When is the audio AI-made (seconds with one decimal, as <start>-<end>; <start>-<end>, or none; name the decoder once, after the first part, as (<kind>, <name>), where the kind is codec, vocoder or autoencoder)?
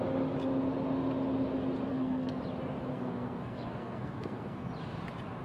1.9-2.4 (codec, SNAC); 2.9-4.7